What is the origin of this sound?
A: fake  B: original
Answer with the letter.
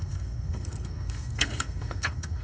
A